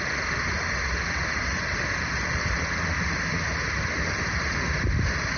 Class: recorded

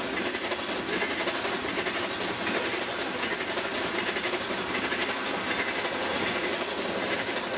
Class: recorded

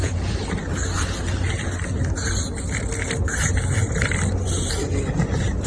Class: recorded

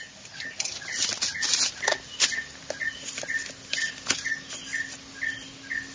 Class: recorded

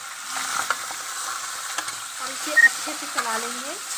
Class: recorded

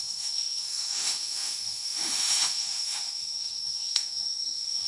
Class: remade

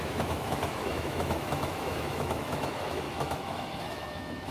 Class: remade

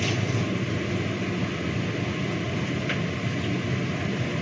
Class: recorded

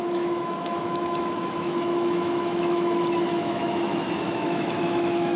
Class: remade